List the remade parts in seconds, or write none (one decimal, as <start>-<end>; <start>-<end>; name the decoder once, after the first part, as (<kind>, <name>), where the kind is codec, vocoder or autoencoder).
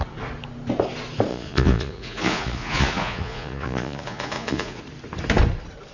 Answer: 1.3-4.8 (vocoder, Vocos)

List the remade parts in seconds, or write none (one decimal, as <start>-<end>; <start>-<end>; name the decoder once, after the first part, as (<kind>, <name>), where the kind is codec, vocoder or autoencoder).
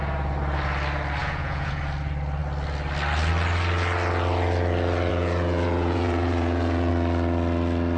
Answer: 1.2-1.8 (vocoder, Vocos); 5.1-6.9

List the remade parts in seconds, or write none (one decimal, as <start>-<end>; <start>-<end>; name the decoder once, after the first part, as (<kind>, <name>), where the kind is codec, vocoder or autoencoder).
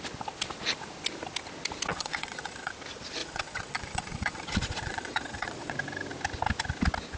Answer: 1.9-2.7 (vocoder, Vocos); 3.2-5.7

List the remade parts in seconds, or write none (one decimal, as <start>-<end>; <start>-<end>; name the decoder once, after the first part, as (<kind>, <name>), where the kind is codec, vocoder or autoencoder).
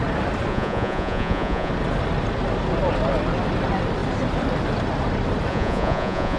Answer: 0.5-1.7 (vocoder, Vocos); 5.5-6.4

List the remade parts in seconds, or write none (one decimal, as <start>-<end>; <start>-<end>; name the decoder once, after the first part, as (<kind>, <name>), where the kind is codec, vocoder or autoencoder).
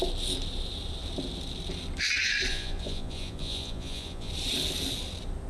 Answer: 2.5-4.3 (vocoder, Vocos)